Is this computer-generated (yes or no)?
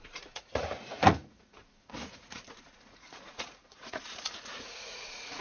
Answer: yes